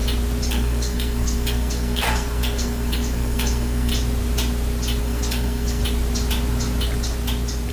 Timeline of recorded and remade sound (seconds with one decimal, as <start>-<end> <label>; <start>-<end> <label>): 0.0-0.5 recorded; 0.5-3.9 remade; 3.9-5.0 recorded; 5.0-5.8 remade; 5.8-7.7 recorded